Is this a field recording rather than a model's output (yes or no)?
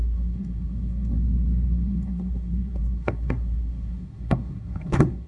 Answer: no